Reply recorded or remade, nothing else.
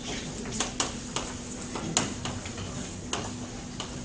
recorded